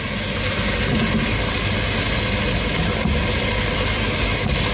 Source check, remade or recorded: recorded